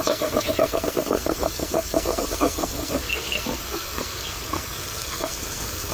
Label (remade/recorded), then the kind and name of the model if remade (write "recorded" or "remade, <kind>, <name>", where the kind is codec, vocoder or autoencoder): remade, codec, SNAC